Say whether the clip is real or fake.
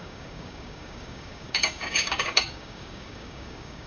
fake